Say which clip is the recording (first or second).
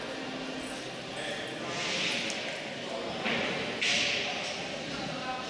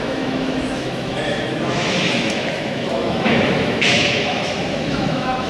first